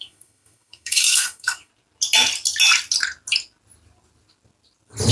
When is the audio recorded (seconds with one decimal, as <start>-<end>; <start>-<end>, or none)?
1.7-5.1